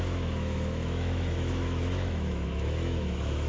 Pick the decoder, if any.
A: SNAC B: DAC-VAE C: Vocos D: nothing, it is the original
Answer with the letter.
B